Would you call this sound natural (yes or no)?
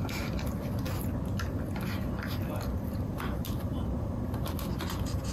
yes